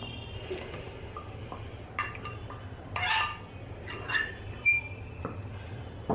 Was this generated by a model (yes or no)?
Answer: no